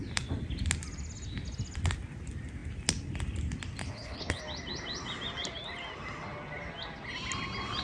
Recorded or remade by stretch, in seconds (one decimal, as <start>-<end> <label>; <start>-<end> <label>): 0.0-3.8 recorded; 3.8-4.4 remade; 4.4-7.8 recorded